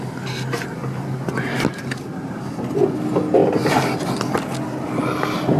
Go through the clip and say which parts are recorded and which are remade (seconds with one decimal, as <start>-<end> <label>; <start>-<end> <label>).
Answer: 0.0-5.6 recorded